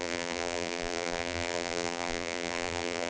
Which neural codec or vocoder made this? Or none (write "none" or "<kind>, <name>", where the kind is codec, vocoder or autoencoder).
vocoder, BigVGAN v2